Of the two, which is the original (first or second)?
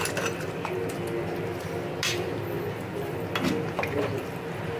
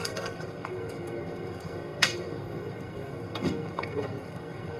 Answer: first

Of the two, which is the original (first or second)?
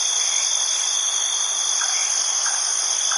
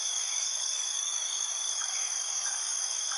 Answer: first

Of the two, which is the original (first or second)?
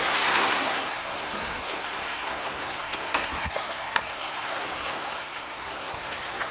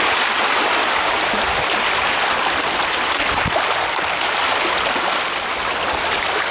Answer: second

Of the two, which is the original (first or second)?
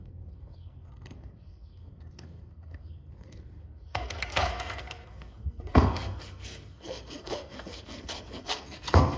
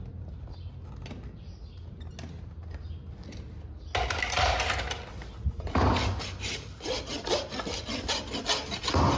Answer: second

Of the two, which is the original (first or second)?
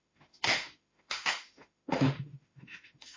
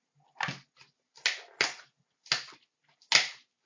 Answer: second